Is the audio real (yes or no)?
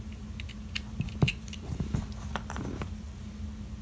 yes